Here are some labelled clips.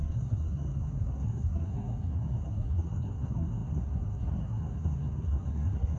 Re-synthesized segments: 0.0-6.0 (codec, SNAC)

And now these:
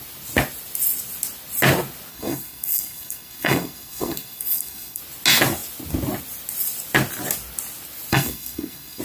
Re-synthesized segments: 2.1-5.0 (codec, SNAC); 8.1-9.0

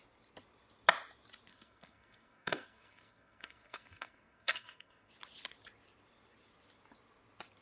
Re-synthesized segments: 1.5-5.1 (codec, SNAC)

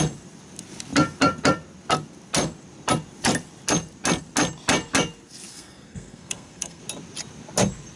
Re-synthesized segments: 5.5-6.8 (codec, SNAC)

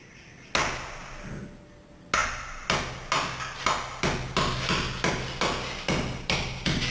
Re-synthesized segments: none

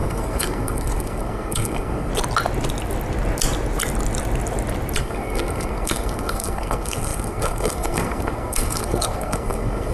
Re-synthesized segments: 0.0-2.1 (codec, SNAC); 5.0-9.9